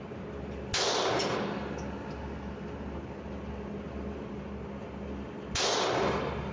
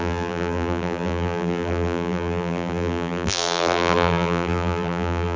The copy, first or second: second